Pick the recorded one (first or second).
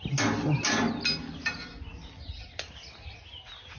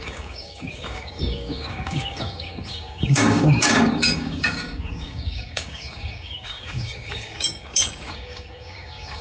first